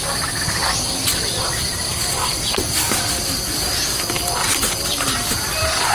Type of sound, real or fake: fake